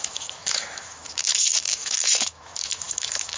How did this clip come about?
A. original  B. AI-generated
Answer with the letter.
B